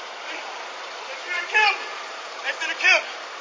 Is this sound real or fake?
fake